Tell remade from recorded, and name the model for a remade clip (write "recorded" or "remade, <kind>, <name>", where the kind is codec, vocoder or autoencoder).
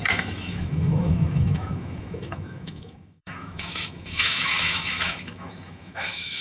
remade, autoencoder, DAC-VAE